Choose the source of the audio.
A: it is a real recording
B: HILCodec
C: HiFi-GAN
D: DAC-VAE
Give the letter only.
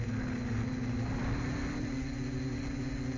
A